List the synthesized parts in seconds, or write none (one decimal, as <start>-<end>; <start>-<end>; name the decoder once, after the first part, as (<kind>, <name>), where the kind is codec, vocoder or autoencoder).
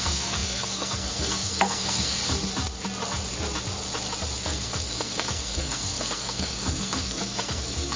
0.0-2.2 (codec, SNAC); 4.4-8.0